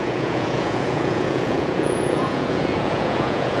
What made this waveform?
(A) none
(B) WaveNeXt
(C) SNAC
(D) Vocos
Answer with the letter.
D